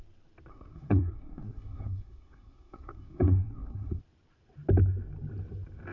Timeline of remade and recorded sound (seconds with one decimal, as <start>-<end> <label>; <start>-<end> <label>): 0.0-0.5 recorded; 0.5-4.0 remade; 4.0-5.9 recorded